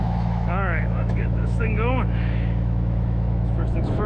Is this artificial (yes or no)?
yes